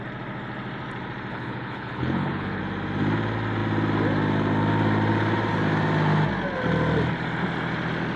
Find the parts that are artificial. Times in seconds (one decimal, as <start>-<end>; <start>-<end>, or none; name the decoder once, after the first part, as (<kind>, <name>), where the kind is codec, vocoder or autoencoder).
1.3-2.6 (codec, HILCodec)